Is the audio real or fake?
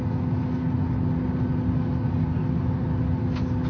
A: real